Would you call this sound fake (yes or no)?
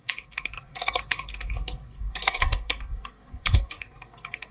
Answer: yes